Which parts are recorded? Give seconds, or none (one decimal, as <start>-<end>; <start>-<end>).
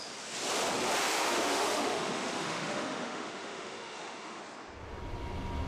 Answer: 0.0-1.0; 4.4-5.7